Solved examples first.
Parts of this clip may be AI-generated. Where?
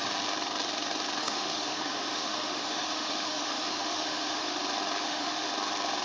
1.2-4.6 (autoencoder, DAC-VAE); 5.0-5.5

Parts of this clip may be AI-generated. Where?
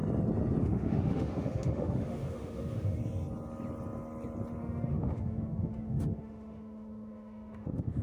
0.6-3.0 (autoencoder, DAC-VAE); 4.6-8.0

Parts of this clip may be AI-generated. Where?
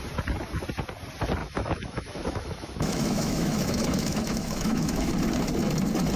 1.4-5.1 (autoencoder, DAC-VAE)